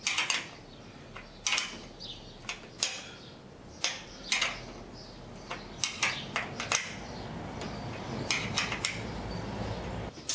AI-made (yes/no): no